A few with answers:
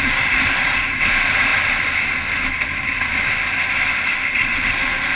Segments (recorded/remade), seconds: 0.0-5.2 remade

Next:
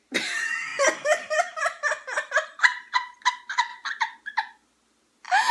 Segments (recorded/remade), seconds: 0.0-0.7 remade; 0.7-2.3 recorded; 2.3-3.7 remade; 3.7-5.5 recorded

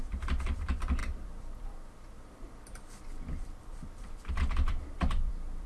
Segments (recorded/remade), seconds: 0.0-5.7 remade

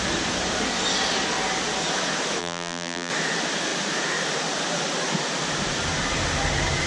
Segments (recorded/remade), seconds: 0.0-2.4 recorded; 2.4-3.1 remade; 3.1-6.9 recorded

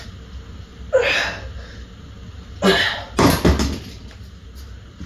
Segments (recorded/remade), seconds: 0.0-5.1 recorded